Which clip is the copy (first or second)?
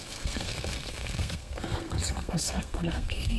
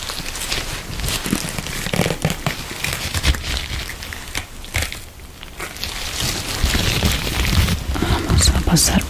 first